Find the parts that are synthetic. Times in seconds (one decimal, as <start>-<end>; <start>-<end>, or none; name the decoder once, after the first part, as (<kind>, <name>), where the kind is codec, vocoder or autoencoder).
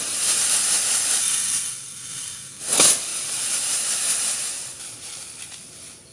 1.2-2.6 (codec, SNAC)